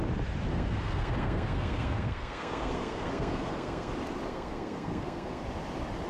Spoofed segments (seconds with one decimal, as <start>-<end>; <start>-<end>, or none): 0.5-3.9; 4.3-5.4